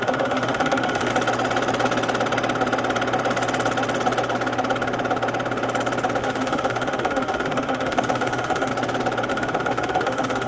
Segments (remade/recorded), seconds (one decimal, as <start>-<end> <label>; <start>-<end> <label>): 0.0-1.1 remade; 1.1-6.2 recorded; 6.2-8.7 remade; 8.7-9.3 recorded; 9.3-10.5 remade